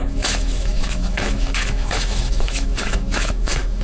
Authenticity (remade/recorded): remade